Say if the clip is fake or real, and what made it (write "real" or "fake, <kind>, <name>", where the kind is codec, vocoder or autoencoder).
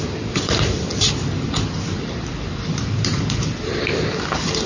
fake, vocoder, BigVGAN v2